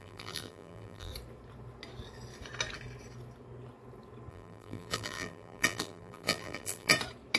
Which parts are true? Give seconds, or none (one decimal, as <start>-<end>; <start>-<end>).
1.1-4.3; 6.9-7.4